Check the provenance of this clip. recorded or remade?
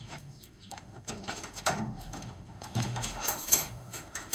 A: remade